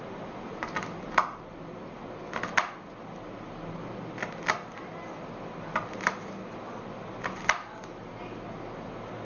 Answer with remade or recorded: recorded